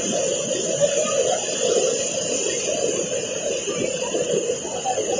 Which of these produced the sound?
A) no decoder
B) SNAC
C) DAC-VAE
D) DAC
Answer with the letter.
A